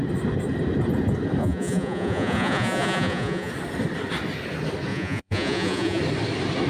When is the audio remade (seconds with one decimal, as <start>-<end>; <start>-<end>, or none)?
1.4-3.5; 4.9-6.0